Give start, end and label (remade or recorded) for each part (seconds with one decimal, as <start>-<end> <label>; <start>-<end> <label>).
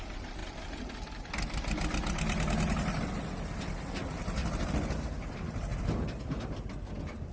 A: 0.0-0.4 recorded; 0.4-3.1 remade; 3.1-4.4 recorded; 4.4-5.0 remade; 5.0-5.7 recorded; 5.7-6.5 remade; 6.5-7.3 recorded